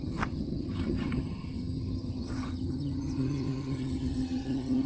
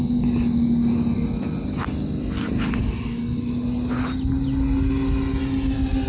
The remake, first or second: first